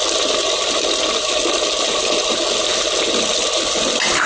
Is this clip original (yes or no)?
yes